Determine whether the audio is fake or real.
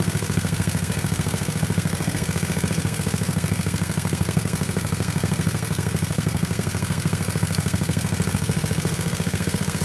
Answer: fake